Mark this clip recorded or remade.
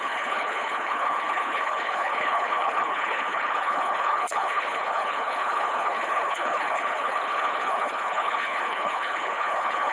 remade